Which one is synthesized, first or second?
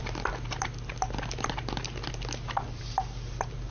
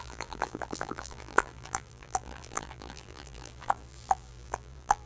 second